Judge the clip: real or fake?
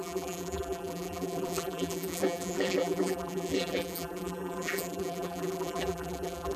fake